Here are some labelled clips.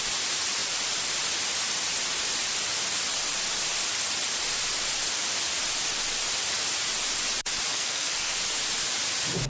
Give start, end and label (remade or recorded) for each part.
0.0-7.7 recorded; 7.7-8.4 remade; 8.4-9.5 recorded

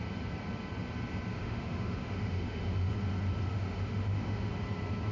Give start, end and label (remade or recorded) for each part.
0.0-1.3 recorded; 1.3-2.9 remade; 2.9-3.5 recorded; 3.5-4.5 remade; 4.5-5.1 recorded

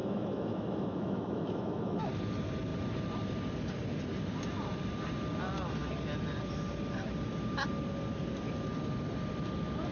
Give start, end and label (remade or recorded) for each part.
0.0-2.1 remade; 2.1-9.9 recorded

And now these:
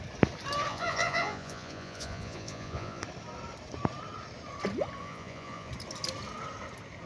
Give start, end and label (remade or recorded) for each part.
0.0-0.7 recorded; 0.7-3.0 remade; 3.0-5.0 recorded; 5.0-5.7 remade; 5.7-7.1 recorded

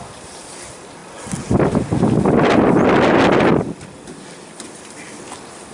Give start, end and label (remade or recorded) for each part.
0.0-5.7 recorded